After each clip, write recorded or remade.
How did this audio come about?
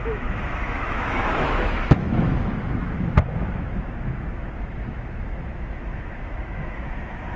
remade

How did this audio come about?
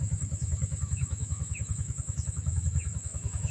remade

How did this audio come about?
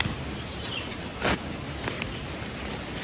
recorded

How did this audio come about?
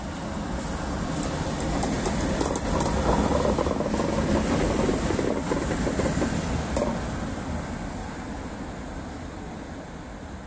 recorded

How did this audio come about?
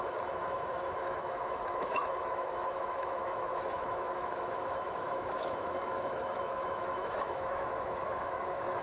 remade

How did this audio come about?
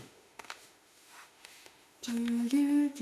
remade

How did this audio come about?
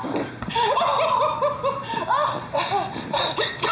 recorded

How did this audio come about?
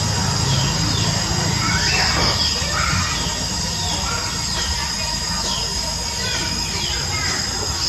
recorded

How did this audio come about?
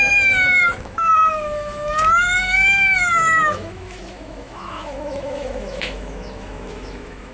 remade